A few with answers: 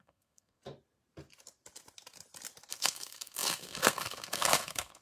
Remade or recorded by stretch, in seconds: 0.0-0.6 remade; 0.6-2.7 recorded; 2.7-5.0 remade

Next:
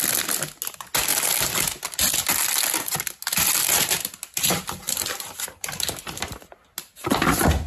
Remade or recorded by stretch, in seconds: 0.0-7.7 recorded

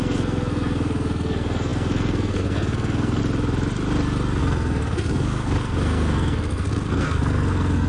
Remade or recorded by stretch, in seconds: 0.0-3.2 remade; 3.2-4.4 recorded; 4.4-7.9 remade

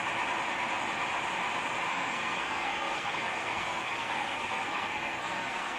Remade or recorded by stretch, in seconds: 0.0-1.9 recorded; 1.9-5.8 remade

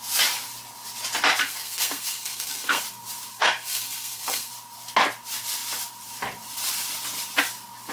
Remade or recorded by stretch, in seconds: 0.0-1.4 recorded; 1.4-2.8 remade; 2.8-3.3 recorded; 3.3-4.5 remade; 4.5-7.9 recorded